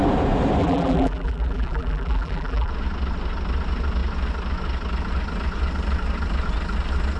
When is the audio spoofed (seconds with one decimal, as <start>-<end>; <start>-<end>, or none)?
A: 0.6-2.7